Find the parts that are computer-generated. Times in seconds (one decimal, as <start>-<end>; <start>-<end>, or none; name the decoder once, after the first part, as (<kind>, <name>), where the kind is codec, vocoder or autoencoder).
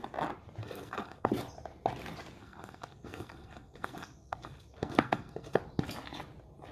0.6-1.3 (codec, SNAC); 2.4-5.6